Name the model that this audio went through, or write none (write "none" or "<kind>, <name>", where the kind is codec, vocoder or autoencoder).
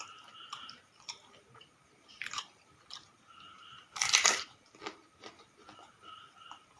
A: vocoder, BigVGAN v2